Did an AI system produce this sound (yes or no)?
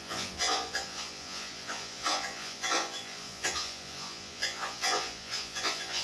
yes